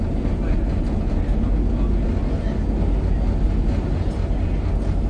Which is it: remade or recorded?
recorded